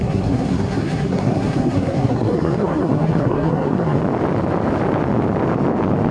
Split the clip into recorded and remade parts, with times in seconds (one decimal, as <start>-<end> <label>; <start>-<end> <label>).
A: 0.0-4.0 remade; 4.0-6.1 recorded